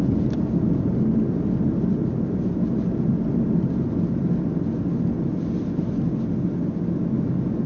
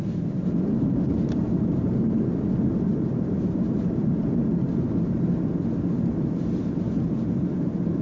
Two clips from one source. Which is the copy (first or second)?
second